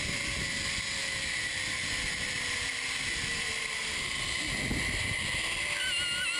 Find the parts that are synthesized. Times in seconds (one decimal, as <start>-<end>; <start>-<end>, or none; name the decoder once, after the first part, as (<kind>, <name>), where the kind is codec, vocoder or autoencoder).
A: 0.0-6.4 (vocoder, BigVGAN v2)

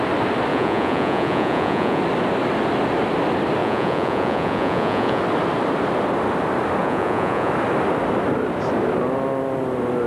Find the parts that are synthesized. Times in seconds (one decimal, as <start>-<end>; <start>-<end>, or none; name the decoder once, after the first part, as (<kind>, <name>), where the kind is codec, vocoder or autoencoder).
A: 0.5-2.0 (vocoder, Vocos); 3.6-5.2; 6.8-7.5

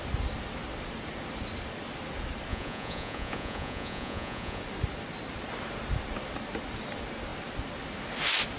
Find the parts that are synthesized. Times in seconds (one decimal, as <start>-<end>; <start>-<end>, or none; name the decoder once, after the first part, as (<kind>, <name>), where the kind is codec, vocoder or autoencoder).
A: 2.5-4.6 (vocoder, Vocos)

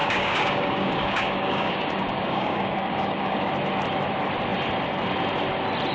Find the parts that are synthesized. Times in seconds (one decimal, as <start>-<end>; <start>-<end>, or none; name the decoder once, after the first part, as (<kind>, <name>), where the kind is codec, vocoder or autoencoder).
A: 0.0-3.5 (codec, DAC)

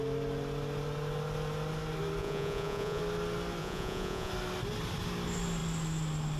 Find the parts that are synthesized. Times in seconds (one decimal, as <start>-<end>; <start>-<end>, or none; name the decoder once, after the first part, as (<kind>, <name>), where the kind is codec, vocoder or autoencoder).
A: 2.2-3.0 (vocoder, Vocos); 3.6-4.3

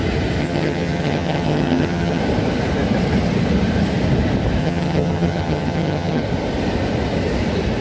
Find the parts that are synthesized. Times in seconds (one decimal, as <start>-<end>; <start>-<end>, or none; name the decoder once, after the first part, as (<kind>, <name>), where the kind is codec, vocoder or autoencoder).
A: 0.4-2.2 (vocoder, HiFi-GAN); 4.6-6.2

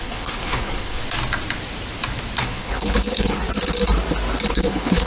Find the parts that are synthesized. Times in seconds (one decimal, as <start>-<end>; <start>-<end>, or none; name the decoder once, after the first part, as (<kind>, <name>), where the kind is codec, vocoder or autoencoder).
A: 0.0-1.0 (codec, HILCodec); 2.4-3.4; 4.5-5.1

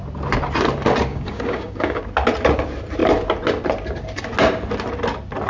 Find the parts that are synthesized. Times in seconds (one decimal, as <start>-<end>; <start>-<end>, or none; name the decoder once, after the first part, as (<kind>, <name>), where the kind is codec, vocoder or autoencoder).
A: 1.1-2.0 (codec, DAC)